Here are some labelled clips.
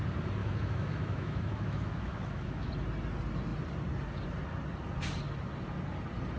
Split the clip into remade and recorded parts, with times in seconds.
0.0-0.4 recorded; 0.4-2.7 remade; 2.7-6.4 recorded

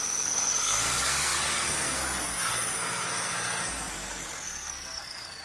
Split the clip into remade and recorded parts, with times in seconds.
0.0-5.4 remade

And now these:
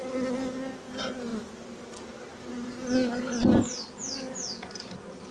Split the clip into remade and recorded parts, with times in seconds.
0.0-5.3 recorded